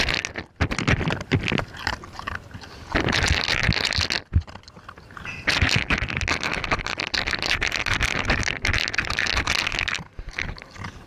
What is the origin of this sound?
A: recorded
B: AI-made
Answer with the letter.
A